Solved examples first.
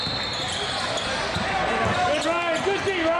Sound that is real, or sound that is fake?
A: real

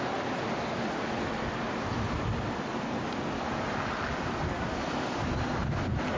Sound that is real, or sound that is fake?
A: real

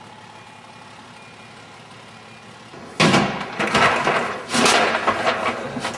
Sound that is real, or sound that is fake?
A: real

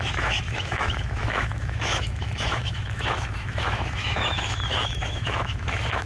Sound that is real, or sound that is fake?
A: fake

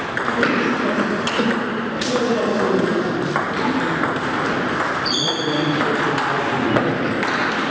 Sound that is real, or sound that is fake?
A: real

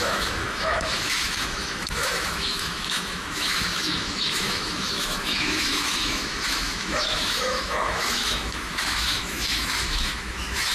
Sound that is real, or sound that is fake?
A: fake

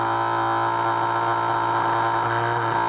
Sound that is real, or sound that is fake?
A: real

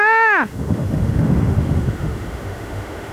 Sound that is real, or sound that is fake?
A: fake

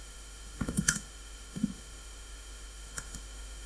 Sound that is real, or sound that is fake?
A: fake